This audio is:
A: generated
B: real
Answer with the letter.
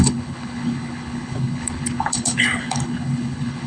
A